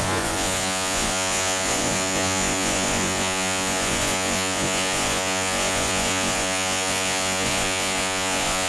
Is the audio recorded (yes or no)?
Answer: no